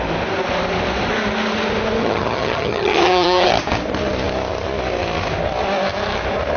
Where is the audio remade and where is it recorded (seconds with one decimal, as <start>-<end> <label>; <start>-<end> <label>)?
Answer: 0.0-2.0 recorded; 2.0-3.5 remade; 3.5-6.6 recorded